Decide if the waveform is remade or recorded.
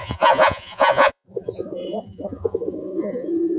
remade